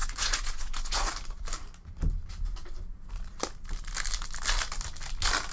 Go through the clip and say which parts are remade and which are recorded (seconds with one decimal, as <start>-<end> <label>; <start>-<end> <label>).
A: 0.0-1.1 remade; 1.1-5.5 recorded